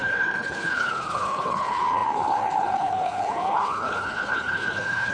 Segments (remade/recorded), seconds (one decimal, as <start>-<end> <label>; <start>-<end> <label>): 0.0-5.1 remade